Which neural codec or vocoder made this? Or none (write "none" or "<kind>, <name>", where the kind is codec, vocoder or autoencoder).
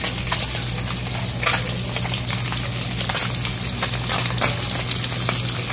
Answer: none